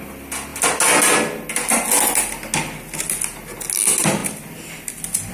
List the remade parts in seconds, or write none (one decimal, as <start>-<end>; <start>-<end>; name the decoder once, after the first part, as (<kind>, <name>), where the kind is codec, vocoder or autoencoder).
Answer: none